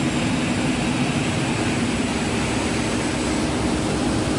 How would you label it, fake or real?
real